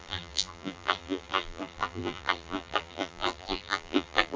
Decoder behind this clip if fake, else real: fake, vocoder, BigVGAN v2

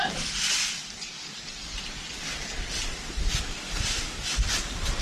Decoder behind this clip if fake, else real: real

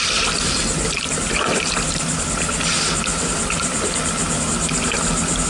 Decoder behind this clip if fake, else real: real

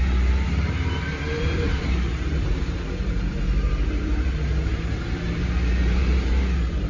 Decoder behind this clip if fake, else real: fake, vocoder, BigVGAN v2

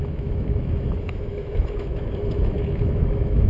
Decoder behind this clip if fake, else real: fake, autoencoder, DAC-VAE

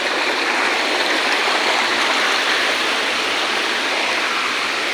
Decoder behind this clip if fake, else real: real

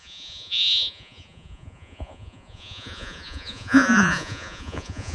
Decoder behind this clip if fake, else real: fake, vocoder, Vocos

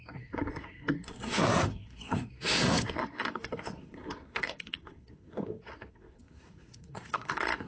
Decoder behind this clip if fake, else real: fake, codec, SNAC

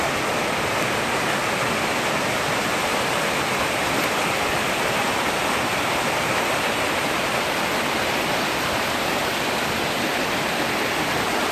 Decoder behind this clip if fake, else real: real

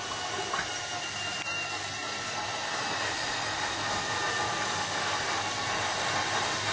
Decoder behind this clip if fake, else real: real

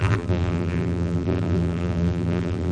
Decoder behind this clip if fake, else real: fake, vocoder, BigVGAN v2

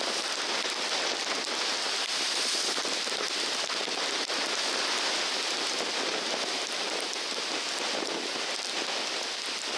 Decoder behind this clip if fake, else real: real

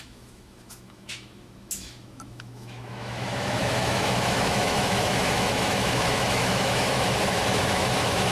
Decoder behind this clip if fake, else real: fake, autoencoder, DAC-VAE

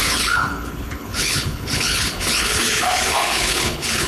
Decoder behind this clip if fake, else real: fake, codec, HILCodec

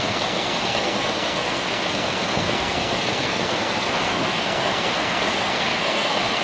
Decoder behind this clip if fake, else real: fake, codec, SNAC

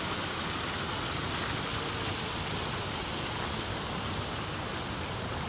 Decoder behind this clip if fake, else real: real